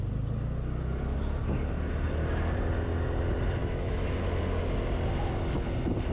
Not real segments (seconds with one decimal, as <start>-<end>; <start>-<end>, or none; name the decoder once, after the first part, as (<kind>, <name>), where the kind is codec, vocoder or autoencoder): 3.6-4.2 (autoencoder, DAC-VAE)